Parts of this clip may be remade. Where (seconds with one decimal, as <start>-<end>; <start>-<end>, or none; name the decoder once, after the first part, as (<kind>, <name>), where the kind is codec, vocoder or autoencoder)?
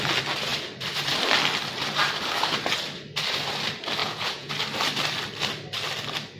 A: 4.0-4.5 (vocoder, Vocos)